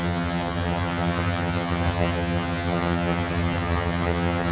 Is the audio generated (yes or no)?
yes